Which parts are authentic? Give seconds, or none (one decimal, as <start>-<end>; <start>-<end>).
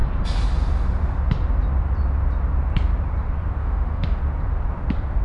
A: 0.0-3.6; 4.2-5.2